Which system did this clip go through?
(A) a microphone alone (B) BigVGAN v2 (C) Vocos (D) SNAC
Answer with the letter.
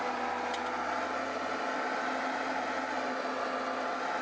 A